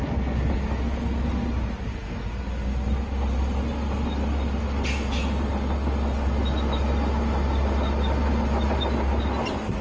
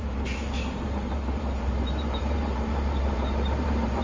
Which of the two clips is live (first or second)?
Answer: first